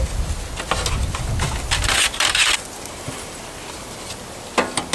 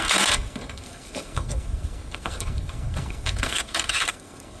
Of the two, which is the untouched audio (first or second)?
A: first